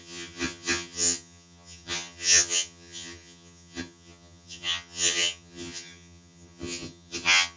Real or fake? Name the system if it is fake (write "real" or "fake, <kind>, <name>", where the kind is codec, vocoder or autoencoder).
fake, vocoder, HiFi-GAN